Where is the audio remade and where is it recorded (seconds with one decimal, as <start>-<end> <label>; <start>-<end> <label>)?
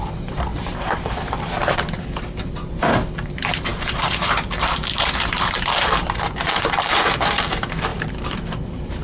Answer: 0.0-9.0 remade